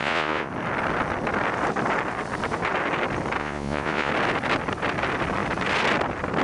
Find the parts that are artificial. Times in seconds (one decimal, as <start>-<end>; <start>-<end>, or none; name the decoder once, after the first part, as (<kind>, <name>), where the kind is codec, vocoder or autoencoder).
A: 0.0-0.5 (vocoder, Vocos); 3.4-4.1